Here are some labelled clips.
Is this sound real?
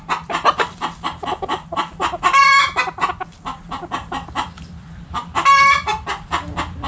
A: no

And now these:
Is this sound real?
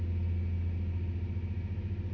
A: yes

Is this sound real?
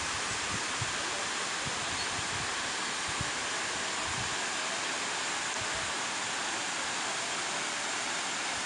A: yes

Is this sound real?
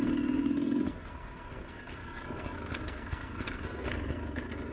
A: no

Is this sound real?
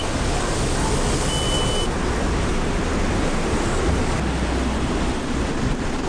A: yes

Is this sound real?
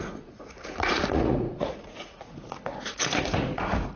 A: no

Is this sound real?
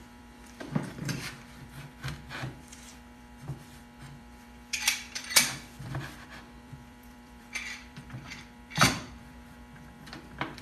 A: no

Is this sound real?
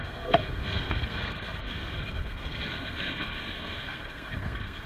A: no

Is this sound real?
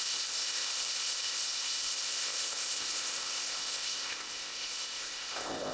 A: no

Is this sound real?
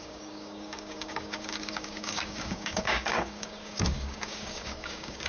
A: no